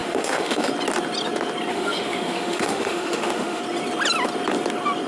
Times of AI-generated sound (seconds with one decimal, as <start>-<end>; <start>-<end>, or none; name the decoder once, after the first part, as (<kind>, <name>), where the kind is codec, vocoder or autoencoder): 0.0-0.7 (autoencoder, DAC-VAE); 1.7-3.6